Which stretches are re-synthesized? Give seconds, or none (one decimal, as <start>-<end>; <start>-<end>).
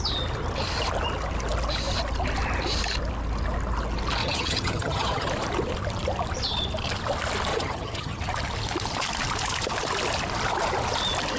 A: 4.2-5.3; 7.5-8.2